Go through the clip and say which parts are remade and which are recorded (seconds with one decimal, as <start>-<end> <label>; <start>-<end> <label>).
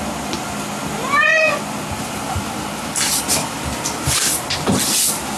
0.0-5.4 recorded